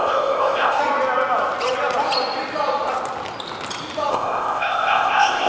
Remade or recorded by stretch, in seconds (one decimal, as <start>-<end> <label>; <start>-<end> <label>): 0.0-0.8 remade; 0.8-4.1 recorded; 4.1-5.5 remade